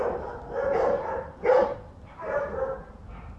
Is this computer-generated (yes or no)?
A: no